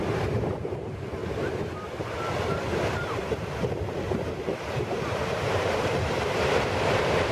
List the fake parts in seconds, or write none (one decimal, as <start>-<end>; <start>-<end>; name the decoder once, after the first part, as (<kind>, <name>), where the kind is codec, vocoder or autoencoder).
0.0-1.2 (vocoder, BigVGAN v2); 2.9-7.3